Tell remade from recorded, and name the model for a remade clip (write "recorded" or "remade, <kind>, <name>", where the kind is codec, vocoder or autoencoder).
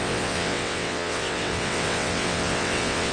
remade, vocoder, WaveNeXt